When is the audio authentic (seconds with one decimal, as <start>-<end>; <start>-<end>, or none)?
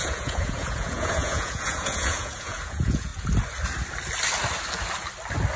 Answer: 3.1-5.6